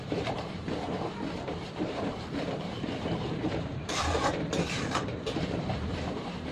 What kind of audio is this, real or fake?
fake